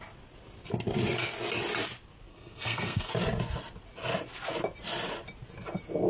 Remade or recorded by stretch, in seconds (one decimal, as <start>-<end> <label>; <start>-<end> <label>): 0.0-2.3 recorded; 2.3-3.1 remade; 3.1-6.1 recorded